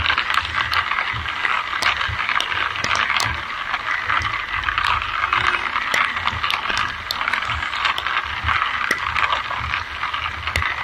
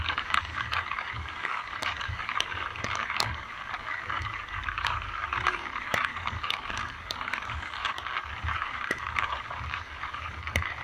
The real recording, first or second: first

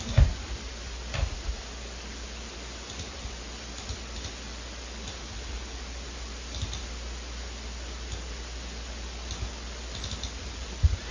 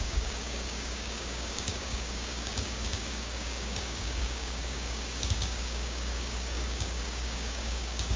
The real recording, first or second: first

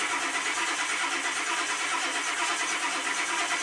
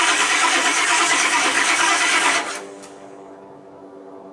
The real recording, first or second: first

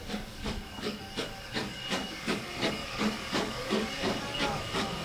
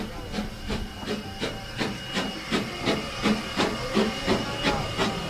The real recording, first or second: second